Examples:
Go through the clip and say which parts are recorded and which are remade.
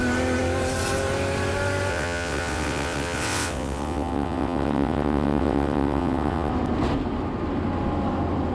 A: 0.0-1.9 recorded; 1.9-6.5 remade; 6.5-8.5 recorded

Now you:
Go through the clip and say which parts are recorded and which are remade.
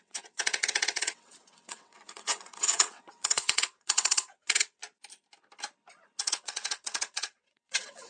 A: 0.0-4.8 remade; 4.8-6.2 recorded; 6.2-8.1 remade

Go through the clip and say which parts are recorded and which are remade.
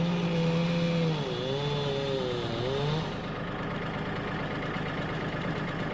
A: 0.0-5.9 recorded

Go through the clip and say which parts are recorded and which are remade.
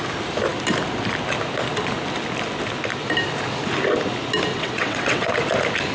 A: 0.0-4.5 recorded; 4.5-5.3 remade; 5.3-5.9 recorded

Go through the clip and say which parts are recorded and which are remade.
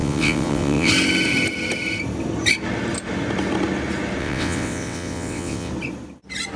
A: 0.0-0.9 remade; 0.9-4.2 recorded; 4.2-5.7 remade; 5.7-6.6 recorded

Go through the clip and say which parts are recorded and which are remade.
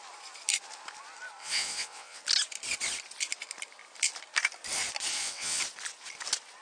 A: 0.0-1.4 recorded; 1.4-2.2 remade; 2.2-5.1 recorded; 5.1-5.6 remade; 5.6-6.6 recorded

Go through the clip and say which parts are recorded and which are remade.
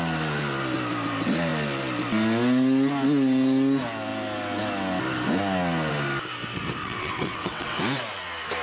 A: 0.0-6.8 recorded; 6.8-7.8 remade; 7.8-8.6 recorded